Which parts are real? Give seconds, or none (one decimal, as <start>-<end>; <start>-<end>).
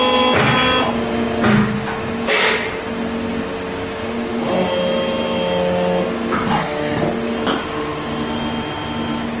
0.0-9.4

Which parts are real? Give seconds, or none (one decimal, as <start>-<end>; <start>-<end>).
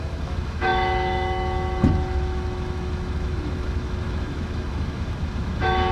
none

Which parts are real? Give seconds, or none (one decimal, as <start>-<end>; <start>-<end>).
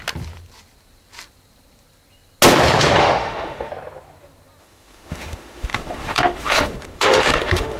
0.0-3.0; 3.7-4.6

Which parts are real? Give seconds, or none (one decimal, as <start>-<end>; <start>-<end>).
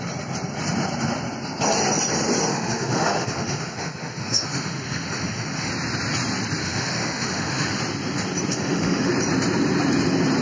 0.0-2.5; 5.7-6.6; 7.8-8.5; 9.1-10.4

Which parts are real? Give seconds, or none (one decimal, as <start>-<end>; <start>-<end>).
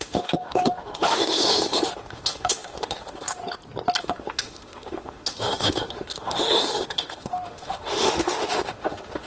3.4-4.0